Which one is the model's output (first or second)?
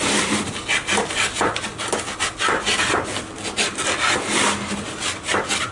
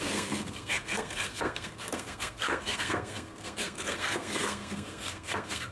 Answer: second